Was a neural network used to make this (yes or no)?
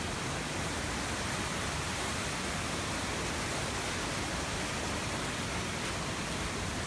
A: no